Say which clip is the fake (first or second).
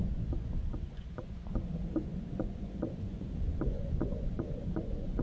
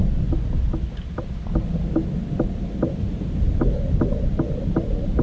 first